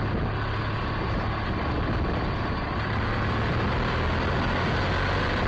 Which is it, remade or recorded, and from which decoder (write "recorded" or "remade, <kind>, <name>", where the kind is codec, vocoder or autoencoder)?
recorded